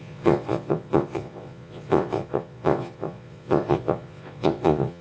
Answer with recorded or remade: remade